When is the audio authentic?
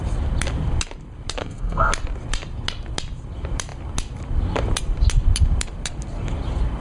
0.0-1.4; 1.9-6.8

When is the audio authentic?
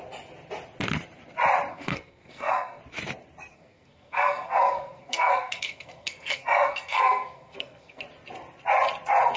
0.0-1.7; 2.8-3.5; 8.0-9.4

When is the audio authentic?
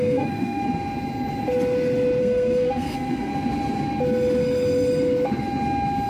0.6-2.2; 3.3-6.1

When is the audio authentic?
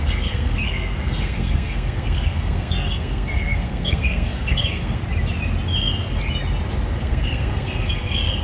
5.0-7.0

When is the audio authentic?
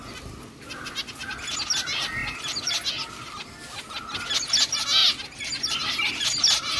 0.0-6.8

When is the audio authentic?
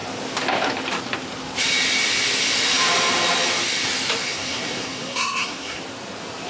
0.0-4.2; 5.8-6.5